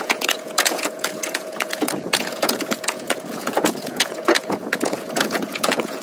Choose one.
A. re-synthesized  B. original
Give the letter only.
A